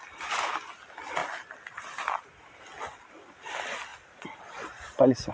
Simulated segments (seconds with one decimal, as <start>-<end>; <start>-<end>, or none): 3.9-5.3